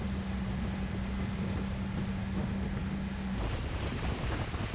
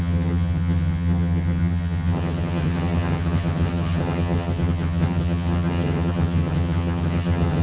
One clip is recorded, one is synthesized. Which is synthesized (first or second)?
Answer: second